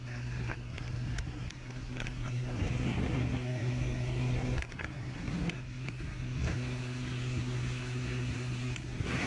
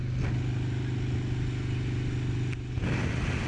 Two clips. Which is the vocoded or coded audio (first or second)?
first